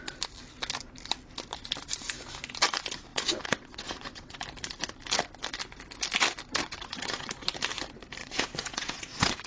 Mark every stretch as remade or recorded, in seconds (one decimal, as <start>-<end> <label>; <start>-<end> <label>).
0.0-3.1 recorded; 3.1-4.4 remade; 4.4-6.6 recorded; 6.6-7.3 remade; 7.3-8.2 recorded; 8.2-9.5 remade